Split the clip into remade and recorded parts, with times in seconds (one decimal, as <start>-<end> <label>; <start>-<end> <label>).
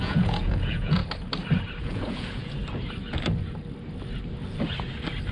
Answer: 0.0-1.0 remade; 1.0-1.8 recorded; 1.8-2.6 remade; 2.6-5.3 recorded